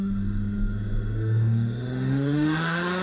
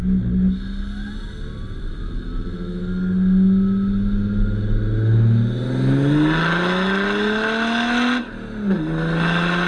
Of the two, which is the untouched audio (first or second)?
second